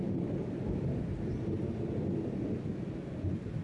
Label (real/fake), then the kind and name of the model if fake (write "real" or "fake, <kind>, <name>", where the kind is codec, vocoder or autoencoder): real